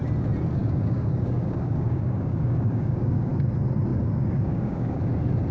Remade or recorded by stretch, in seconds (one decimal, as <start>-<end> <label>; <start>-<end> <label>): 0.0-0.6 recorded; 0.6-3.3 remade; 3.3-3.9 recorded; 3.9-5.0 remade; 5.0-5.5 recorded